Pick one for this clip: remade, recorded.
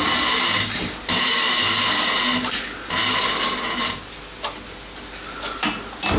recorded